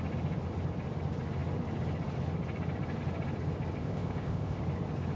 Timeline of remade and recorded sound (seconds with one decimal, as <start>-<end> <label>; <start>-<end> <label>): 0.0-3.8 recorded; 3.8-4.6 remade; 4.6-5.2 recorded